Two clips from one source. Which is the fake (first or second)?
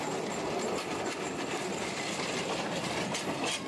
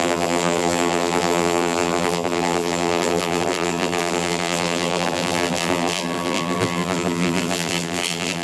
second